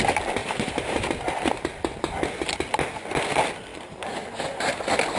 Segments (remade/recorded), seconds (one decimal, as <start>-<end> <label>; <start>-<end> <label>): 0.0-0.4 recorded; 0.4-1.0 remade; 1.0-3.7 recorded; 3.7-4.8 remade; 4.8-5.2 recorded